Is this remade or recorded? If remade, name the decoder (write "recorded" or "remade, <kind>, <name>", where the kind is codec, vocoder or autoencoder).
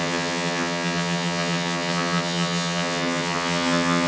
remade, vocoder, HiFi-GAN